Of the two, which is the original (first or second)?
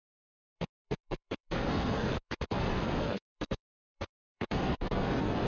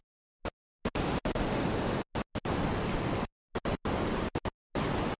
second